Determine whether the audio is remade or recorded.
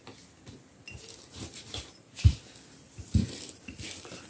recorded